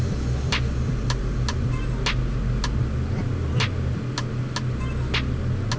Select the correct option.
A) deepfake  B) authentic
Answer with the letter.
B